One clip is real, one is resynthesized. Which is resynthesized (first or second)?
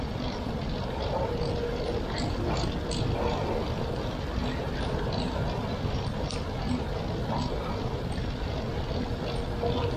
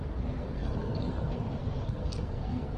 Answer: second